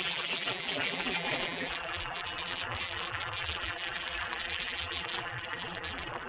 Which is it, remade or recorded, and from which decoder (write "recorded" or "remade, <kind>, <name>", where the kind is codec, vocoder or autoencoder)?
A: remade, vocoder, BigVGAN v2